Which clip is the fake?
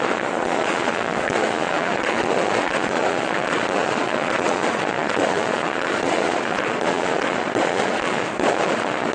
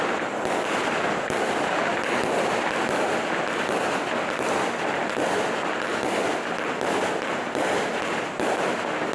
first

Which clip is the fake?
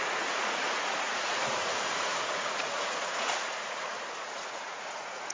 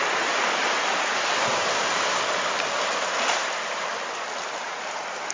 first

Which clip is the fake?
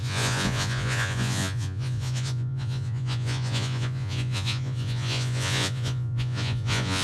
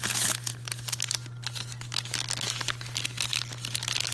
first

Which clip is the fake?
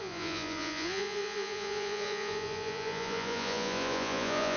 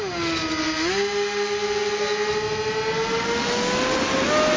first